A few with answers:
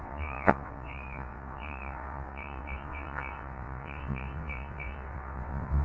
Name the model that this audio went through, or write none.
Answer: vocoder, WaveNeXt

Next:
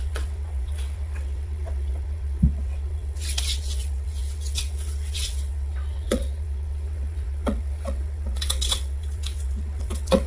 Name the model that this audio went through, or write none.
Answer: vocoder, WaveNeXt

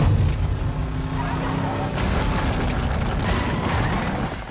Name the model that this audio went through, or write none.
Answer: none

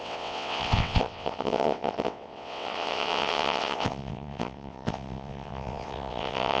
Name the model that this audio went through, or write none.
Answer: vocoder, WaveNeXt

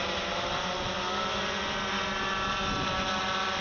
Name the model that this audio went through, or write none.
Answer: none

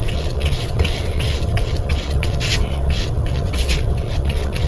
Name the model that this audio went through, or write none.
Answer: vocoder, WaveNeXt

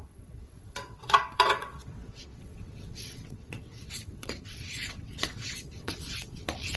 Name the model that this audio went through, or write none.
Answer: vocoder, WaveNeXt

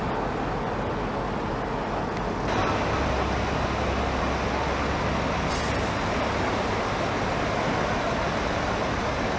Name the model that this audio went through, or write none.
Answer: none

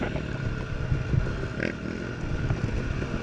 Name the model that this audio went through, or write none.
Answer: none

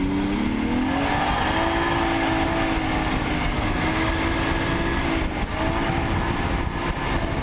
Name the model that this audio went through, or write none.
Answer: none